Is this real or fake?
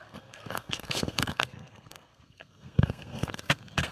fake